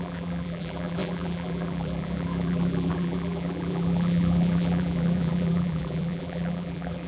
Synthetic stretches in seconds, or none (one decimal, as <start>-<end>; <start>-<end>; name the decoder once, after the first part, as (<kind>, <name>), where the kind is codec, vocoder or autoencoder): 0.0-7.1 (vocoder, BigVGAN v2)